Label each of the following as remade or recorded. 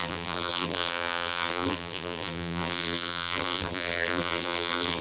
remade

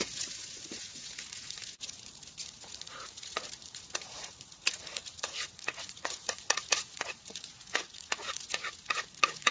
remade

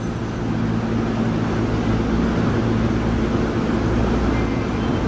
recorded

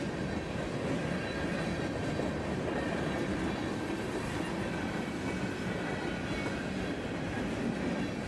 recorded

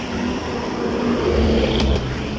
recorded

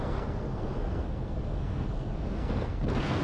remade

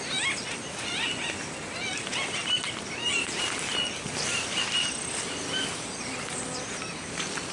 recorded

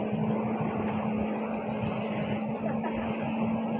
recorded